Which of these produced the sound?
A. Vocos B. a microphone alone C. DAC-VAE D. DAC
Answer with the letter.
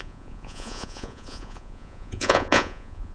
A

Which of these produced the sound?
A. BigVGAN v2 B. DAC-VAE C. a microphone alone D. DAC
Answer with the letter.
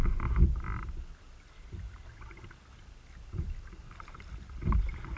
C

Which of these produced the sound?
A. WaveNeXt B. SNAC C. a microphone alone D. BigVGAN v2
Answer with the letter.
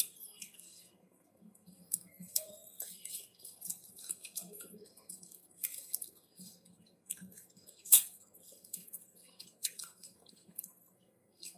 B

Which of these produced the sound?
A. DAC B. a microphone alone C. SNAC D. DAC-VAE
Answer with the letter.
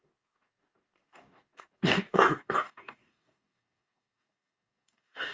A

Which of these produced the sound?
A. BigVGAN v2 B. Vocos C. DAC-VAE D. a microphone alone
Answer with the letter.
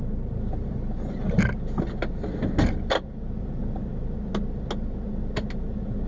D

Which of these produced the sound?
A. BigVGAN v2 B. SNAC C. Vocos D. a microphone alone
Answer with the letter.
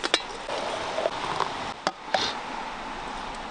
D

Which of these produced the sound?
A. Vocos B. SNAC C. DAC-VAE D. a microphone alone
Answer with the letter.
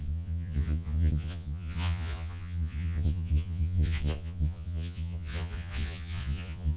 A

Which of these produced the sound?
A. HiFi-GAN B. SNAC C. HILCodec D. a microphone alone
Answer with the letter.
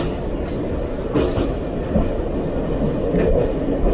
D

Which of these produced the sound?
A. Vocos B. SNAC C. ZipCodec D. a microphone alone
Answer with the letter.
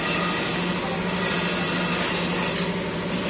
D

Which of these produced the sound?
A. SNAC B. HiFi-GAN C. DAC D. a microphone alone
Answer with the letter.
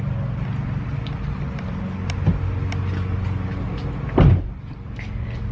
D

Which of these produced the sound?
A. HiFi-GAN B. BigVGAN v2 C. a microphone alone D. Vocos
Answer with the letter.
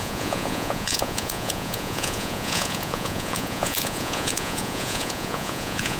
D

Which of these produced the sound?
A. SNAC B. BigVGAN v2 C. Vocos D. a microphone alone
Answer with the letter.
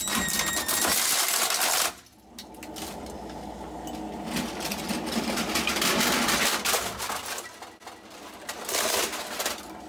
D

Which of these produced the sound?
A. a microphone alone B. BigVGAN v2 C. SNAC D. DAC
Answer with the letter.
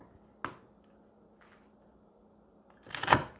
A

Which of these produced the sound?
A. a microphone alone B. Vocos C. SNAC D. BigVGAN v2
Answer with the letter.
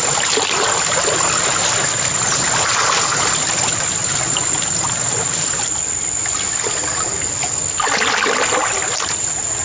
A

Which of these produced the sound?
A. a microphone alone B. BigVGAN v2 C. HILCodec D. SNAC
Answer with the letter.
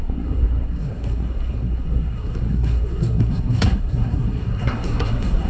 D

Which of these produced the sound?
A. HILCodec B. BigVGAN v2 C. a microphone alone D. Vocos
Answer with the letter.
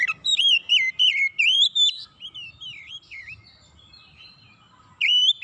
B